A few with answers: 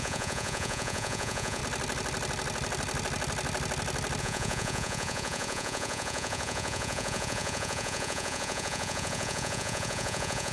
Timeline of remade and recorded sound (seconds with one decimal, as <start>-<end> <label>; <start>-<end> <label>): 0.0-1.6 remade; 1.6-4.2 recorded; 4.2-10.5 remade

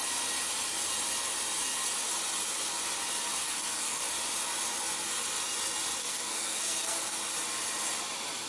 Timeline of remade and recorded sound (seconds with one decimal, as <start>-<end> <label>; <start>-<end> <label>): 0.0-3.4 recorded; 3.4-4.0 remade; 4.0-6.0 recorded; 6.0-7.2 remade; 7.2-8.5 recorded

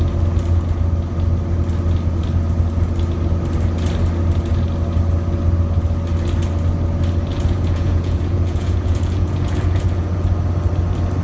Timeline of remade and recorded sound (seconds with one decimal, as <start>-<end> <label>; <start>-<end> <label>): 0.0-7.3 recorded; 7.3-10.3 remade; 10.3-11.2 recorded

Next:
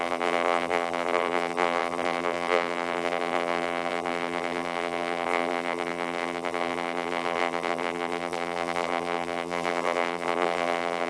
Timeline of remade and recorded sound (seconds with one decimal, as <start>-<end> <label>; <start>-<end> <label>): 0.0-11.1 remade

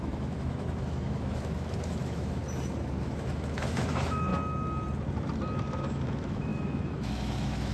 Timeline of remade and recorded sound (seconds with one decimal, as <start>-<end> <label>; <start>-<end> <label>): 0.0-2.4 remade; 2.4-3.0 recorded; 3.0-4.3 remade; 4.3-5.6 recorded; 5.6-7.7 remade

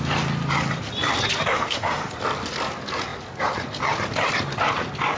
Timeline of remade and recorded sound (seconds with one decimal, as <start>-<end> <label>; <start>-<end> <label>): 0.0-1.5 recorded; 1.5-2.1 remade; 2.1-5.2 recorded

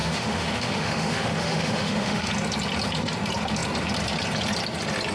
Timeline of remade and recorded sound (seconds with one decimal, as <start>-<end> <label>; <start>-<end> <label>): 0.0-2.3 remade; 2.3-5.1 recorded